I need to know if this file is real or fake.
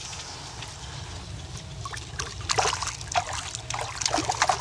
real